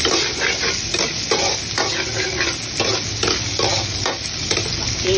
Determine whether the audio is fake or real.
real